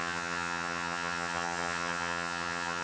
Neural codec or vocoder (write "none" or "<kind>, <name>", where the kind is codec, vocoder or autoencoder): vocoder, HiFi-GAN